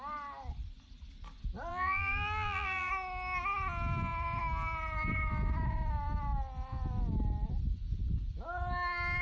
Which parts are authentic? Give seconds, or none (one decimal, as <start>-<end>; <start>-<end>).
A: 0.0-1.7; 2.9-9.2